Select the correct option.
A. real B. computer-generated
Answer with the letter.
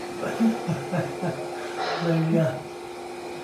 A